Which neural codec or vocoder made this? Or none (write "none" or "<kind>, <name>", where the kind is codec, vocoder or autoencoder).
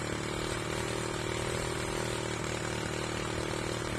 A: none